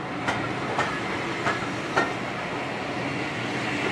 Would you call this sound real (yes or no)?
yes